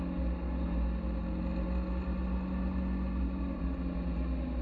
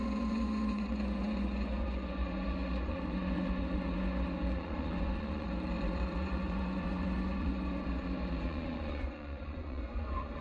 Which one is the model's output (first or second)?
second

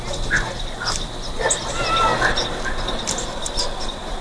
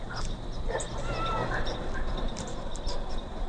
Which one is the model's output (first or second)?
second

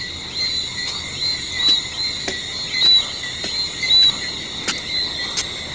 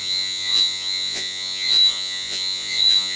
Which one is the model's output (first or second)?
second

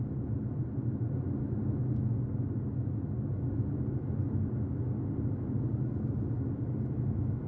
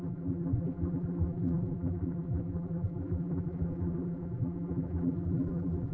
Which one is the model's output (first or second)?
second